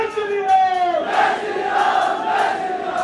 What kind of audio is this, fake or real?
real